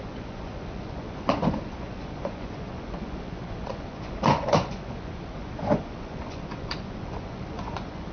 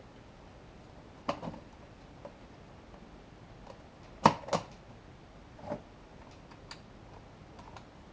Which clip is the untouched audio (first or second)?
second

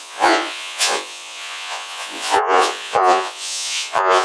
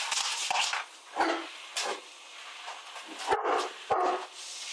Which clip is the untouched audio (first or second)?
second